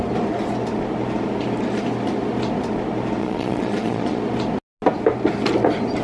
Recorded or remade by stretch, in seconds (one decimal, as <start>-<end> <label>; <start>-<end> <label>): 0.0-3.2 recorded; 3.2-4.2 remade; 4.2-6.0 recorded